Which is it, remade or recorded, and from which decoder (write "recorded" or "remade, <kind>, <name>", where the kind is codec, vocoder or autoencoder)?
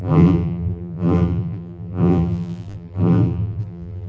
remade, vocoder, BigVGAN v2